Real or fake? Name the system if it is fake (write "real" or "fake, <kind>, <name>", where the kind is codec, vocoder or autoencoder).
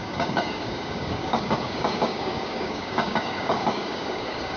fake, codec, DAC